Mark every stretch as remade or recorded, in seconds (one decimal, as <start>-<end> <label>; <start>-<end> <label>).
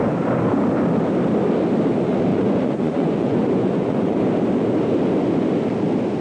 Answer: 0.0-2.3 recorded; 2.3-4.2 remade; 4.2-6.2 recorded